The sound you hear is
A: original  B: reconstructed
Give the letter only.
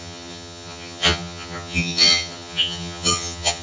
B